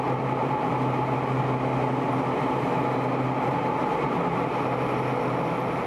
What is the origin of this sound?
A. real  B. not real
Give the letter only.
A